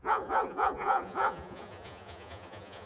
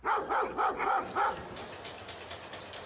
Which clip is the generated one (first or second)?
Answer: first